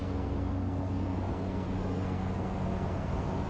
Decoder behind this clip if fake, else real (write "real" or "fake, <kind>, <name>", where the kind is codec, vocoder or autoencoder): fake, codec, SNAC